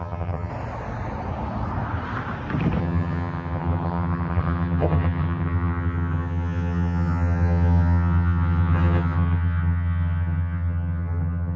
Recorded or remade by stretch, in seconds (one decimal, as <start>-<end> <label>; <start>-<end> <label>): 0.0-0.5 remade; 0.5-2.8 recorded; 2.8-11.6 remade